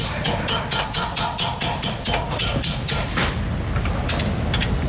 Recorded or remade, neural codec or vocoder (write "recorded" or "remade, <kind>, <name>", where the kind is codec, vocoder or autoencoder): recorded